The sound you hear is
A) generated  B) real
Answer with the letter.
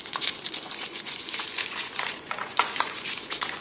A